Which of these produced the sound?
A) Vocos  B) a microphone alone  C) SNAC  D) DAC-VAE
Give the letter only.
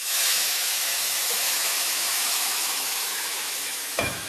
D